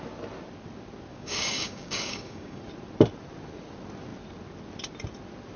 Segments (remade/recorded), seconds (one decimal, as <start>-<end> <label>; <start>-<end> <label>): 0.0-1.1 recorded; 1.1-2.6 remade; 2.6-5.6 recorded